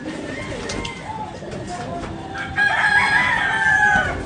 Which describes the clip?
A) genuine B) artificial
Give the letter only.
A